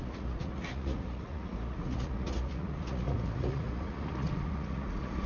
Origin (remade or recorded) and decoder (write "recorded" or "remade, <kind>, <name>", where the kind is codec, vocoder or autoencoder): remade, vocoder, Vocos